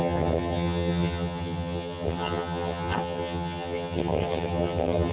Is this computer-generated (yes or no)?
yes